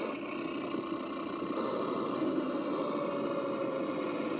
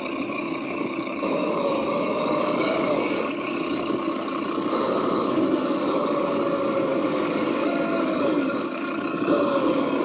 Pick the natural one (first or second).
first